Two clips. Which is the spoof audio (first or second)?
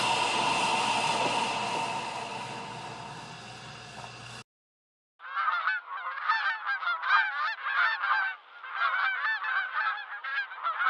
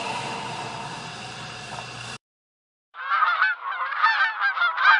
second